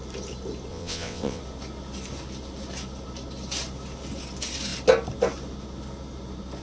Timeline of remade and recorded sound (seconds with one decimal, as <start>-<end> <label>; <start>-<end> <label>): 0.0-0.7 recorded; 0.7-1.4 remade; 1.4-6.6 recorded